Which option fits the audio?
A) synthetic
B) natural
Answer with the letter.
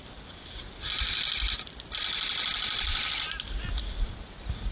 B